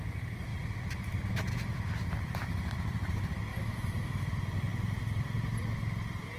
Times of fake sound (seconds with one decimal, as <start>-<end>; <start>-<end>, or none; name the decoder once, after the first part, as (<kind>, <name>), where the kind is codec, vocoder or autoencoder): 3.5-4.2 (autoencoder, DAC-VAE)